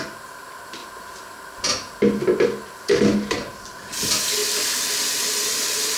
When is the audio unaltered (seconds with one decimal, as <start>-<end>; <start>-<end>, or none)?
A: 0.0-3.1; 4.0-6.0